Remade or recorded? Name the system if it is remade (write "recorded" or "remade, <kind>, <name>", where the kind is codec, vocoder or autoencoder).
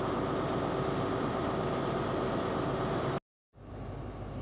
recorded